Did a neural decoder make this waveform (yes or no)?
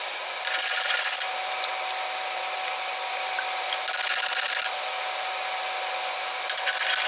no